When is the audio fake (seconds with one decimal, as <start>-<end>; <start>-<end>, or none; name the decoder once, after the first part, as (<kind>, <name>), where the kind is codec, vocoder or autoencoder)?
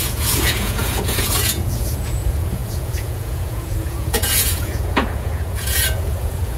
0.0-6.6 (vocoder, Vocos)